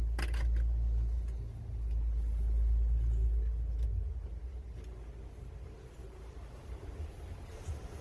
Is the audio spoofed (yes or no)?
no